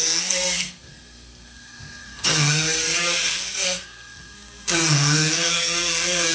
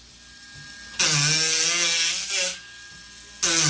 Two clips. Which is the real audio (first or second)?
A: second